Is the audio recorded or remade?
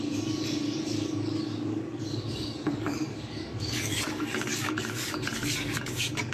remade